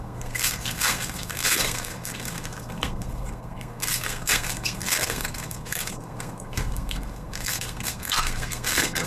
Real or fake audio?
fake